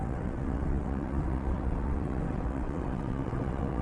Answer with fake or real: fake